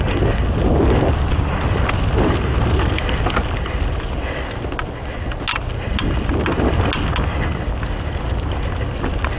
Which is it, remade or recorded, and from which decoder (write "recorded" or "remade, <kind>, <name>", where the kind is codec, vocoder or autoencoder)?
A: recorded